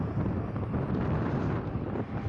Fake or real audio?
real